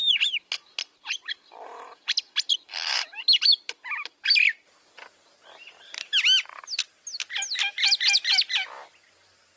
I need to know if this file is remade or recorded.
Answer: recorded